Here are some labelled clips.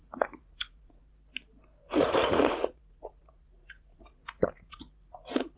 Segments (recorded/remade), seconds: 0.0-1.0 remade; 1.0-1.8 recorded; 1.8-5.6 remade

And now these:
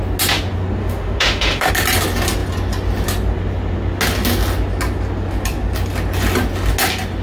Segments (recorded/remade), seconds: 0.0-0.8 recorded; 0.8-1.7 remade; 1.7-7.2 recorded

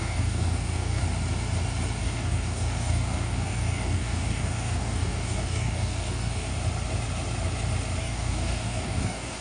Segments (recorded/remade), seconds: 0.0-1.0 remade; 1.0-2.0 recorded; 2.0-6.5 remade; 6.5-8.0 recorded; 8.0-9.4 remade